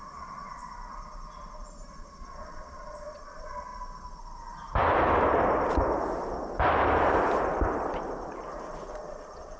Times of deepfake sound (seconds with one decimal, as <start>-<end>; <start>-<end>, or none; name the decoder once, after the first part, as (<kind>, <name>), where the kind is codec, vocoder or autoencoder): 0.0-0.6 (vocoder, Vocos); 1.9-3.7; 8.9-9.6